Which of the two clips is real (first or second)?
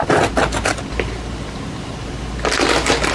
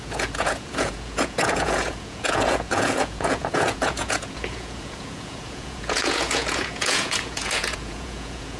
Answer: first